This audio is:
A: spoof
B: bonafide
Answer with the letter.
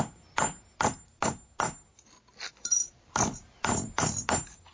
B